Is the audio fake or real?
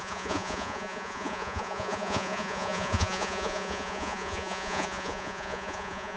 fake